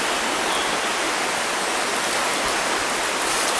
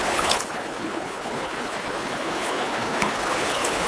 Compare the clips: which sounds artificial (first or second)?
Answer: second